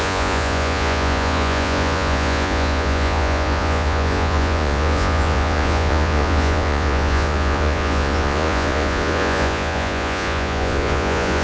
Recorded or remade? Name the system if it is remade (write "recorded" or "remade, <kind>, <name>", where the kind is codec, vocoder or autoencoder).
remade, vocoder, Vocos